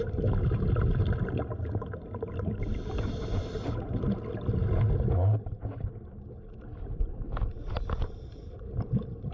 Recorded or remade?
recorded